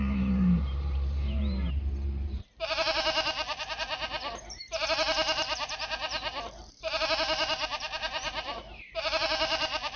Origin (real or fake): fake